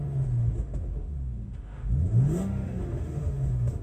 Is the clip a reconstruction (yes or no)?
yes